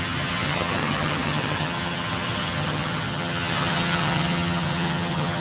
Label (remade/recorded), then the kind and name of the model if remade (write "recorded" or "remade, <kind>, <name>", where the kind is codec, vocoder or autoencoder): remade, vocoder, HiFi-GAN